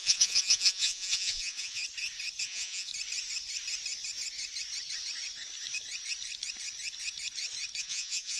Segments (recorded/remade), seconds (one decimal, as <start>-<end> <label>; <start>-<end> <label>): 0.0-1.8 remade; 1.8-2.4 recorded; 2.4-2.9 remade; 2.9-7.8 recorded; 7.8-8.4 remade